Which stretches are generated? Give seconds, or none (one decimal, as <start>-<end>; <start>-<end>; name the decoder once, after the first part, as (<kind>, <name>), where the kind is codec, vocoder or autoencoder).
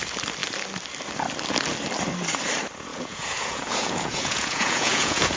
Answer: 2.9-5.4 (vocoder, Vocos)